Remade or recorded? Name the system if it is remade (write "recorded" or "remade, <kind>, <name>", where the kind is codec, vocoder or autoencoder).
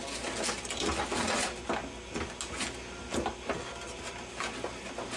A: recorded